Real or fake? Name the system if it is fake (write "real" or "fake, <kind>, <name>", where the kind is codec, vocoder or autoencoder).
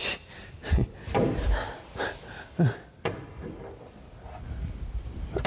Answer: real